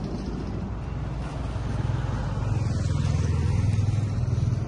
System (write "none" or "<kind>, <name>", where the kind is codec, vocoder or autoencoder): none